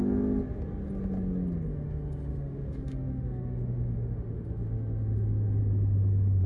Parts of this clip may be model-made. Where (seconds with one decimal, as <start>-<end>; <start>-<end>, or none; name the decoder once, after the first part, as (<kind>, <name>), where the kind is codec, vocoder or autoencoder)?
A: 1.7-5.6 (autoencoder, DAC-VAE)